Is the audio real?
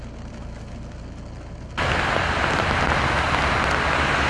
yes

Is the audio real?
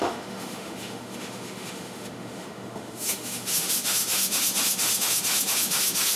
no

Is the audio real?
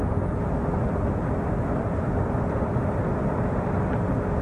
yes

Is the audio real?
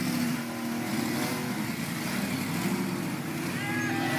yes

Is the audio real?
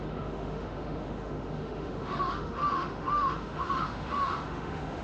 no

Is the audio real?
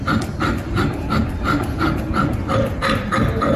yes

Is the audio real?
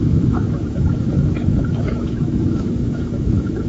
no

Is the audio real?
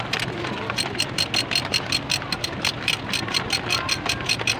yes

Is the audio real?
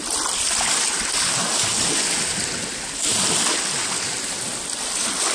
yes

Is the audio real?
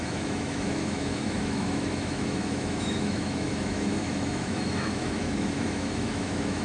no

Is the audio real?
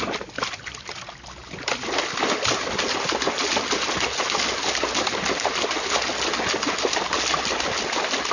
yes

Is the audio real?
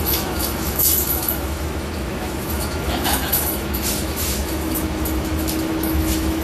no